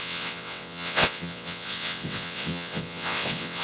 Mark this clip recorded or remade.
remade